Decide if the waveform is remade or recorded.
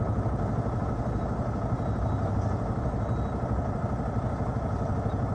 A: recorded